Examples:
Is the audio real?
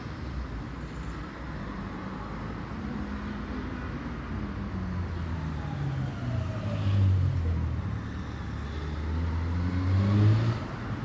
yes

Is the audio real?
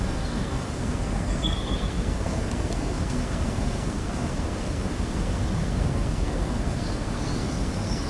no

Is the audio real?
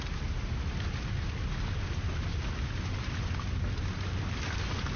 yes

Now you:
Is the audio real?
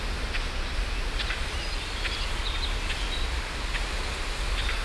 yes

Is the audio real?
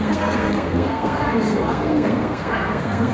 no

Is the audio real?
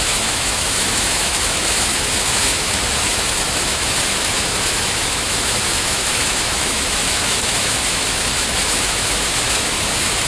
no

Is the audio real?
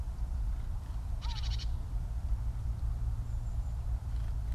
no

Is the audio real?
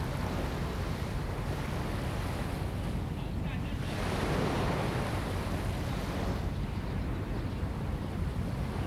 yes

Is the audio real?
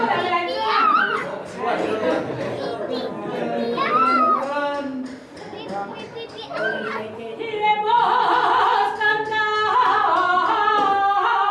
yes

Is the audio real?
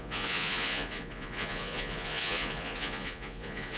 no